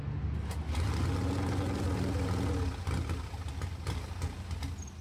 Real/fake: real